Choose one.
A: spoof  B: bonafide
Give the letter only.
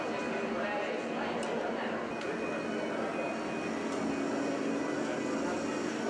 B